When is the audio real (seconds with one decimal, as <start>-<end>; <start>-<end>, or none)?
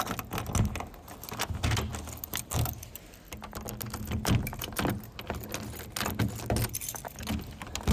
0.0-7.9